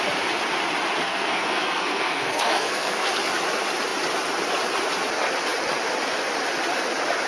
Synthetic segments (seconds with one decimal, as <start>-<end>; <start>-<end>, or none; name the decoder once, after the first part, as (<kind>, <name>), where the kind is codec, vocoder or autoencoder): 1.0-3.1 (codec, SNAC)